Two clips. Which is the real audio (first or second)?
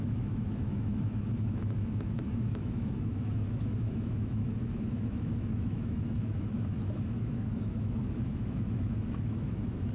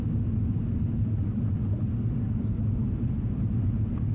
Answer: second